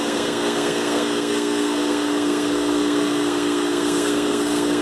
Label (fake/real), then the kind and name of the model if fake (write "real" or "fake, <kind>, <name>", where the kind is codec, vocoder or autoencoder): fake, codec, SNAC